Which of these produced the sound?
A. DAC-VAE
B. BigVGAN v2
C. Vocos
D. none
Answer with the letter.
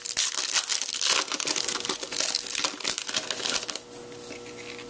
D